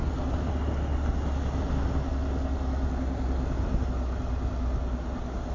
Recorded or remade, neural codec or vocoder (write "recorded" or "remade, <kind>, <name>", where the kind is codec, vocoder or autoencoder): recorded